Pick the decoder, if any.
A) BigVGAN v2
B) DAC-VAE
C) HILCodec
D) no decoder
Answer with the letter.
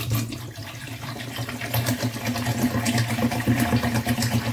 D